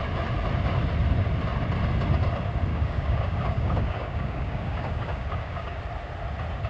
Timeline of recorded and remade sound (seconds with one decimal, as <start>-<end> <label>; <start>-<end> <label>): 0.0-2.7 recorded; 2.7-5.8 remade; 5.8-6.7 recorded